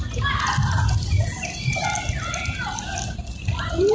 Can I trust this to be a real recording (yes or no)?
yes